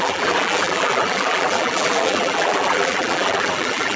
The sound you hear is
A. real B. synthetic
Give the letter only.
B